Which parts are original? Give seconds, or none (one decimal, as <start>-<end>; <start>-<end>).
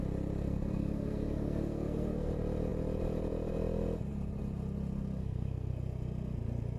0.0-0.4; 2.3-5.2; 5.7-6.8